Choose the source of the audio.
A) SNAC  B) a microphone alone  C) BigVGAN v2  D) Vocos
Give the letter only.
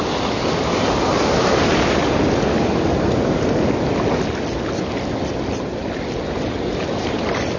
B